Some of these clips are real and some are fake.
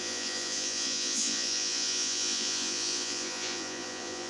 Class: fake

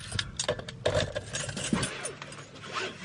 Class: real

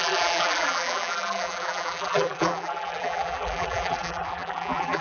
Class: fake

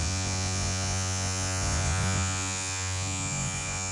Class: fake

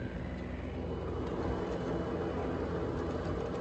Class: real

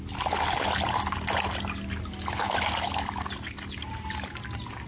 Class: real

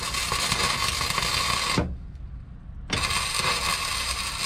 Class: real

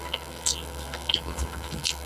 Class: fake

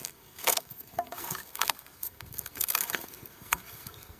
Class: fake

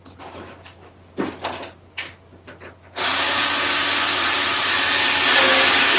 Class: real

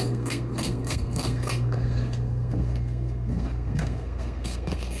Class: fake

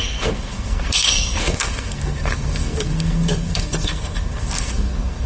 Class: fake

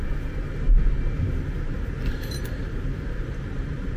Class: fake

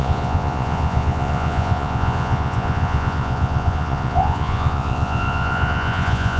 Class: fake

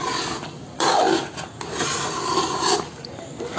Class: real